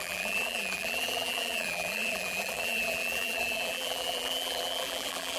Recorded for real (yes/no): no